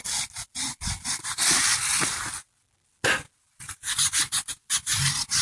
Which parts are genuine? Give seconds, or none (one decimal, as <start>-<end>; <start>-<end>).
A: 0.0-5.4